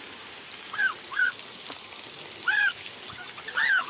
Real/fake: real